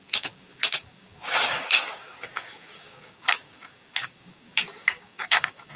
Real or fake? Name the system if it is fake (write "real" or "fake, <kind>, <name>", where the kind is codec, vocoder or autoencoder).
fake, codec, DAC